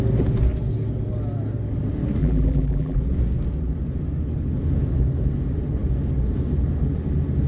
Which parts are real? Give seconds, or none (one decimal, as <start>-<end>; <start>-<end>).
0.0-2.2; 3.0-7.5